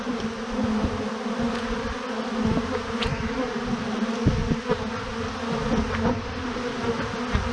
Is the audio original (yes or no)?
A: yes